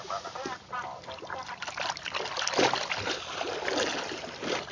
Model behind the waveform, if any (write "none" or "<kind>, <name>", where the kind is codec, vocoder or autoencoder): none